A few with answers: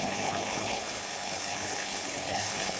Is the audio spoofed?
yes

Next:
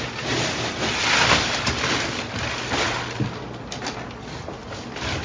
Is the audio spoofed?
no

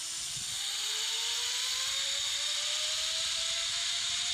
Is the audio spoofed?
no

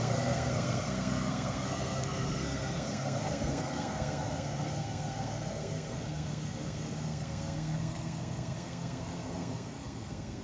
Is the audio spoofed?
yes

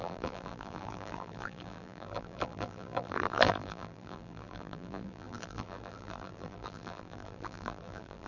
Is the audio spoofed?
yes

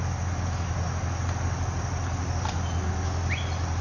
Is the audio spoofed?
no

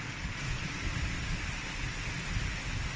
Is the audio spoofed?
no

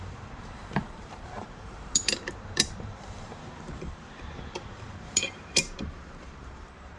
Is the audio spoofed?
yes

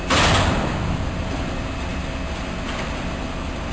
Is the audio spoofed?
no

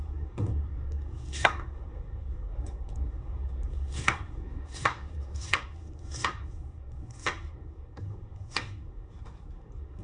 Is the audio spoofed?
yes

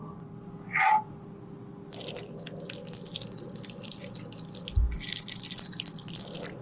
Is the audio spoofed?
no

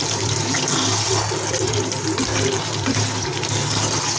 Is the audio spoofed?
no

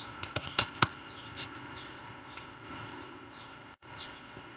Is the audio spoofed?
yes